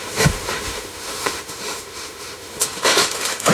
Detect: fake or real fake